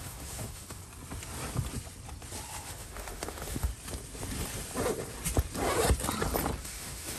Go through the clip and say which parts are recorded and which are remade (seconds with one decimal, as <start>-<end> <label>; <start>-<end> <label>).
0.0-0.8 remade; 0.8-2.6 recorded; 2.6-3.7 remade; 3.7-6.6 recorded; 6.6-7.2 remade